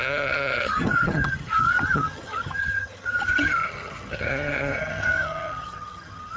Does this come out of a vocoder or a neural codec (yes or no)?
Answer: yes